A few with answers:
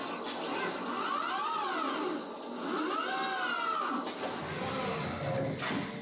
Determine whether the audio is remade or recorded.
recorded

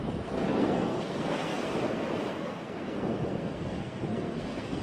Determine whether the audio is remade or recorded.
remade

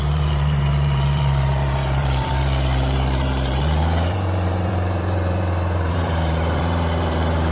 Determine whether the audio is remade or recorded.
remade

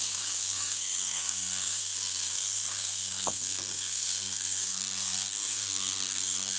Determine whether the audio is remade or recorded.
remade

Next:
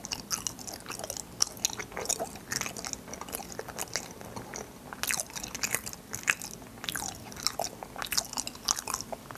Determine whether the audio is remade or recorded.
recorded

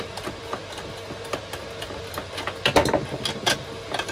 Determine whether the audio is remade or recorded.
recorded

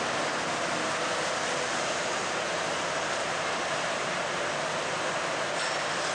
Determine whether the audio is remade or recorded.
recorded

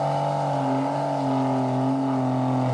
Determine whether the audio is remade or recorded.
recorded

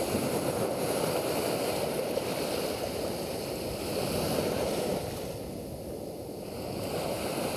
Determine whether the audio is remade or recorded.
recorded